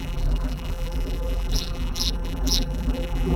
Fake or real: fake